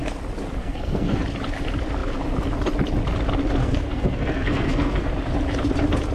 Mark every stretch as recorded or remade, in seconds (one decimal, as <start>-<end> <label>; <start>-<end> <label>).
0.0-0.6 recorded; 0.6-1.2 remade; 1.2-3.6 recorded; 3.6-5.1 remade; 5.1-6.1 recorded